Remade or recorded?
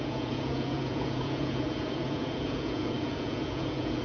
remade